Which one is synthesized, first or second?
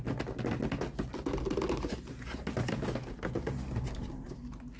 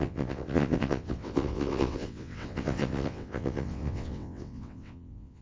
second